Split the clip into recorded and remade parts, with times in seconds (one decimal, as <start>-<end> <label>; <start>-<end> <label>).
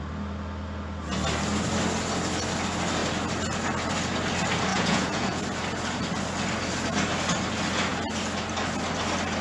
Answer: 0.0-4.7 recorded; 4.7-5.4 remade; 5.4-9.4 recorded